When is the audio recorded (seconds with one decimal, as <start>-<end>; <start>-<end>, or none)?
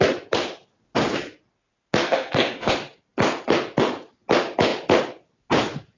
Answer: 0.0-2.0; 2.7-6.0